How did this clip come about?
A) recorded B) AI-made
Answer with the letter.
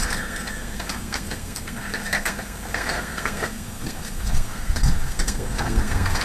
B